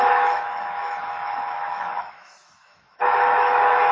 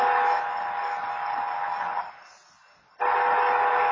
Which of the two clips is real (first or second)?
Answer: second